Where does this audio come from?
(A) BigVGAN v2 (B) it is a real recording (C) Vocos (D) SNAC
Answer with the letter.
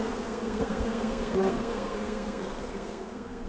D